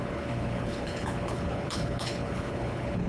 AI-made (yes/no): yes